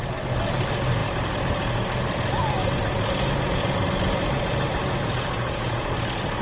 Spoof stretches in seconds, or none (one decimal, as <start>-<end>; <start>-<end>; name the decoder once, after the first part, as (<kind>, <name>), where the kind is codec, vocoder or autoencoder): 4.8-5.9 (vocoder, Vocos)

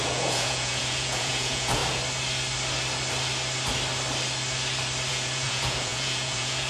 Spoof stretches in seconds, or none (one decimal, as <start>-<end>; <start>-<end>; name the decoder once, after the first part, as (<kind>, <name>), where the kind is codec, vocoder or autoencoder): 0.0-1.8 (vocoder, Vocos); 5.1-6.7

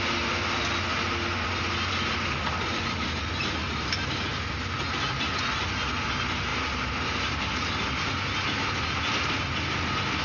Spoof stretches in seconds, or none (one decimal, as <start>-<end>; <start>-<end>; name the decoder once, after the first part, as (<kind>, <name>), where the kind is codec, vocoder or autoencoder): 6.5-7.7 (vocoder, BigVGAN v2)